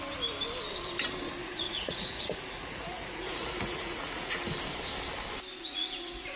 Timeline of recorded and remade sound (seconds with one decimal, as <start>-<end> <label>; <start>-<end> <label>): 0.0-1.4 recorded; 1.4-4.4 remade; 4.4-5.5 recorded; 5.5-6.4 remade